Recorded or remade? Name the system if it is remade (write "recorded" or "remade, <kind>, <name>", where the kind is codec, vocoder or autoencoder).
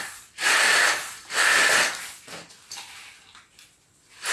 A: recorded